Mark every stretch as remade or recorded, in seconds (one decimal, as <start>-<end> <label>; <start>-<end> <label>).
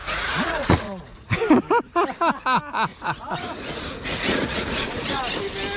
0.0-1.3 remade; 1.3-2.9 recorded; 2.9-5.2 remade; 5.2-5.8 recorded